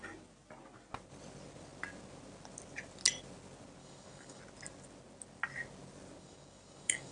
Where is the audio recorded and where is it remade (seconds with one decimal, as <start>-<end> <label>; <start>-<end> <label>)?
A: 0.0-3.8 recorded; 3.8-4.4 remade; 4.4-6.2 recorded; 6.2-7.1 remade